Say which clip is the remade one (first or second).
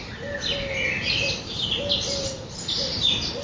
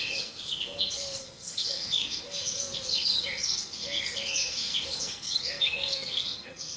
second